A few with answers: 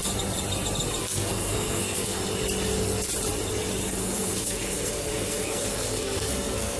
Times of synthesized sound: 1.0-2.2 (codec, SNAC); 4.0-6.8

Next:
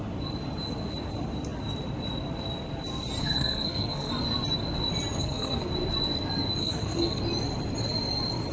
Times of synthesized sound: 3.2-4.1 (codec, SNAC); 5.2-5.7; 6.6-7.2

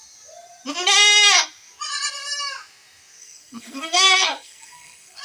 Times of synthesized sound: 3.2-5.2 (codec, SNAC)

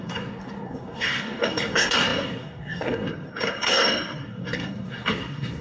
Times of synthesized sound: 0.0-5.6 (codec, SNAC)

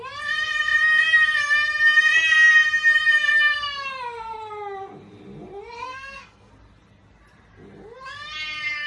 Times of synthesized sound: 5.8-6.5 (codec, SNAC)

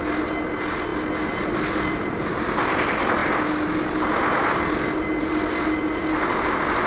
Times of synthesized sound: none

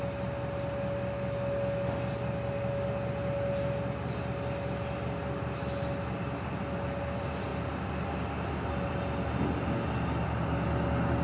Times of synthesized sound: none